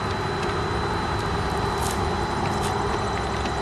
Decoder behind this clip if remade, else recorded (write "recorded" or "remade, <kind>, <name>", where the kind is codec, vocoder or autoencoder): recorded